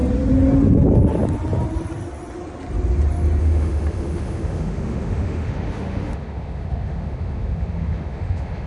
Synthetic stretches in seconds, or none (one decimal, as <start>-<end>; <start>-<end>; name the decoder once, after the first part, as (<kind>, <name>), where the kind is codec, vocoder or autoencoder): 3.4-8.7 (autoencoder, DAC-VAE)